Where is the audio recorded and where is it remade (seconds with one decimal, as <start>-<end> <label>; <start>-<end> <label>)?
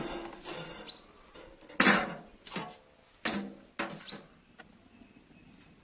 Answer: 0.0-5.8 recorded